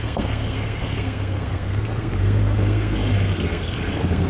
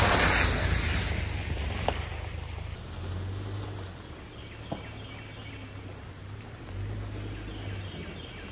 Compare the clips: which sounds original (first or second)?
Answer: second